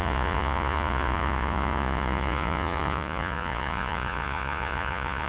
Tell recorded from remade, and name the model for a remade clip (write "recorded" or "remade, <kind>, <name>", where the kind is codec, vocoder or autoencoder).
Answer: remade, vocoder, Vocos